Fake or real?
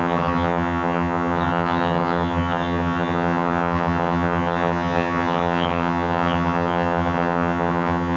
fake